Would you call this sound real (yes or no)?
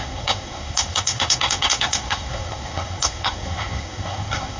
no